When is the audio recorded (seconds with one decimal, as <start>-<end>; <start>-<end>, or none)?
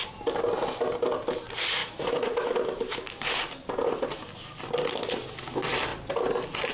0.0-1.8; 3.3-6.7